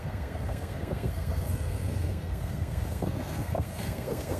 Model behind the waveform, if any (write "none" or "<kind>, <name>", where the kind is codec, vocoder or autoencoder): codec, SNAC